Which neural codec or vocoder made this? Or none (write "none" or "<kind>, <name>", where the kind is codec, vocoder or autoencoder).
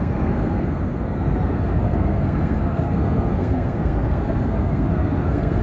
codec, SNAC